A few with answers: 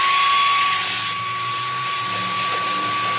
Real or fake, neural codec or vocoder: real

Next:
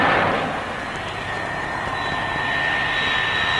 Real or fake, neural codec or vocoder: real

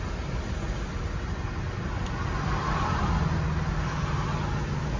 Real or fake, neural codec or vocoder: real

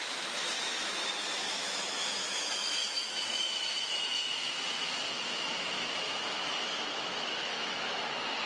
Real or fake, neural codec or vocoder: fake, autoencoder, DAC-VAE